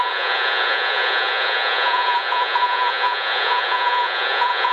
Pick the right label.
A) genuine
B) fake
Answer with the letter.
B